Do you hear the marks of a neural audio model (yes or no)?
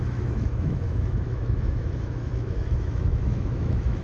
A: yes